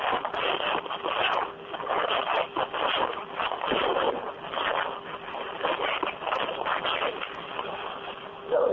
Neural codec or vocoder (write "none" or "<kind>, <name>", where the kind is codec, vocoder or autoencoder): none